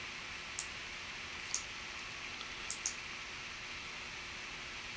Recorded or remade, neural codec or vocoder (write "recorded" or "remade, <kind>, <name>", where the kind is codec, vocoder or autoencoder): recorded